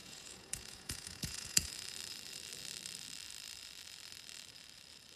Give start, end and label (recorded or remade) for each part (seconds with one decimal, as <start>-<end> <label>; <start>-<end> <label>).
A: 0.0-1.7 remade; 1.7-5.2 recorded